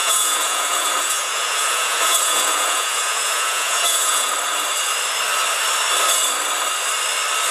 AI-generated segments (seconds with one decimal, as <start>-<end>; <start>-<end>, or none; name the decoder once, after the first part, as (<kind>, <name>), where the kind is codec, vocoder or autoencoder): 0.0-4.3 (vocoder, Vocos)